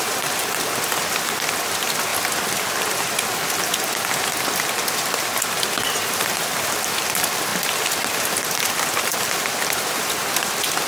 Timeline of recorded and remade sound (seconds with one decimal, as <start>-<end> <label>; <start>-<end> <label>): 0.0-2.1 remade; 2.1-5.6 recorded; 5.6-7.5 remade; 7.5-8.6 recorded; 8.6-10.9 remade